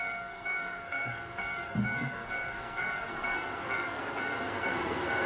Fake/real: fake